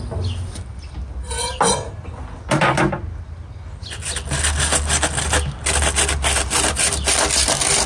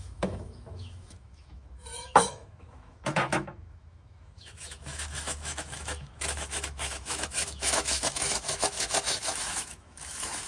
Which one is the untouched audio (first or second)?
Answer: first